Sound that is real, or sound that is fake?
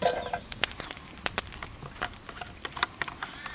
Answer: real